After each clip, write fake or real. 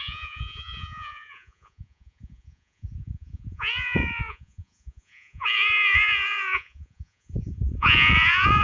fake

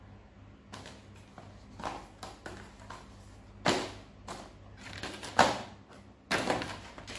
real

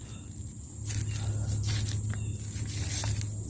real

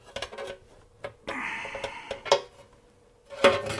real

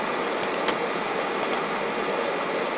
real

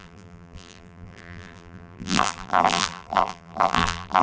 fake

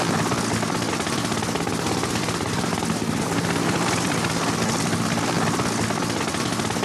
real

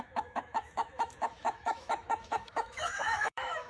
fake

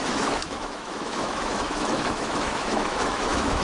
fake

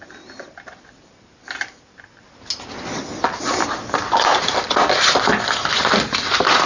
real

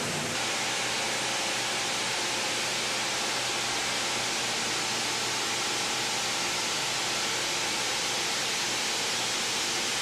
real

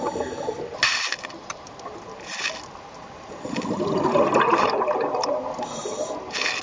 real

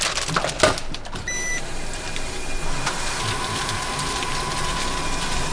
real